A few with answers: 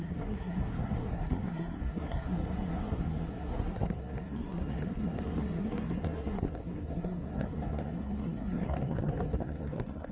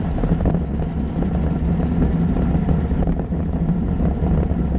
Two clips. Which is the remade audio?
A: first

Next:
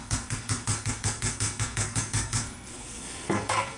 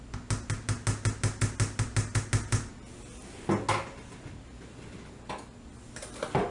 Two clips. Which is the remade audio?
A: first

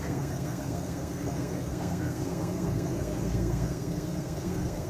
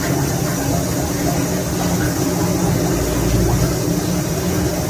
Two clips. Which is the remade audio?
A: first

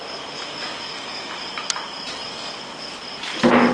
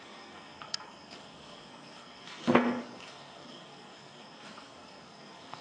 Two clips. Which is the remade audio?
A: second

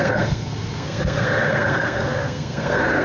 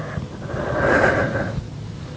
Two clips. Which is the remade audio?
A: first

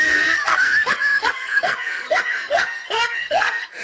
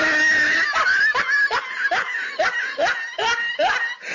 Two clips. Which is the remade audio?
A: first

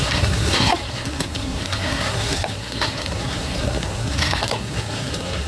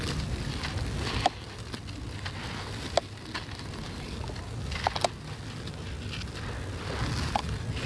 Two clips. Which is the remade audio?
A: first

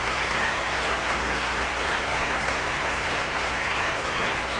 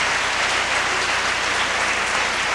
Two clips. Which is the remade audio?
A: first